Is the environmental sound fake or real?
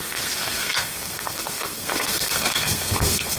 fake